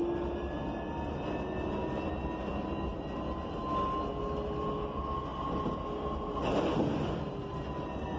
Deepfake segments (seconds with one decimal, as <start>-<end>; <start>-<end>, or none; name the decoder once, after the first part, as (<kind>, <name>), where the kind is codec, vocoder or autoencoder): none